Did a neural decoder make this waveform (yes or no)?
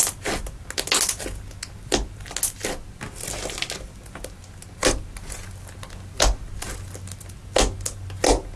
no